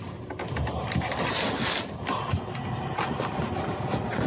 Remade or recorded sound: recorded